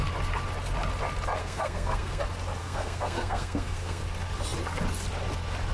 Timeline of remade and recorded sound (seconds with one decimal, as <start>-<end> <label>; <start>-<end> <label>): 0.0-1.4 recorded; 1.4-2.2 remade; 2.2-2.6 recorded; 2.6-4.0 remade; 4.0-5.7 recorded